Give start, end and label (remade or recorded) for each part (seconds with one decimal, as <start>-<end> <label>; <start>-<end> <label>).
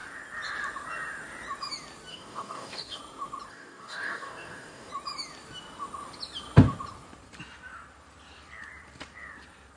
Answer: 0.0-2.1 recorded; 2.1-3.0 remade; 3.0-3.5 recorded; 3.5-4.9 remade; 4.9-9.8 recorded